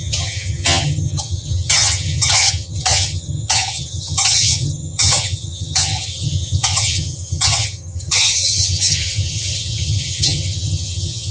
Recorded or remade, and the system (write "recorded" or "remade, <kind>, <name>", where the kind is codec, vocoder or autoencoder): remade, vocoder, HiFi-GAN